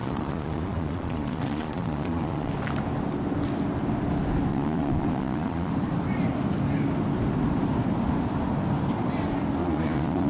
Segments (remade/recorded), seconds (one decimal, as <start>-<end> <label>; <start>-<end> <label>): 0.0-2.5 remade; 2.5-4.5 recorded; 4.5-5.7 remade; 5.7-9.6 recorded; 9.6-10.3 remade